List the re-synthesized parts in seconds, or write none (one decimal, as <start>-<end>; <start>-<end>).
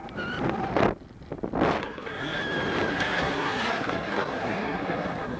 1.8-2.4; 2.9-5.4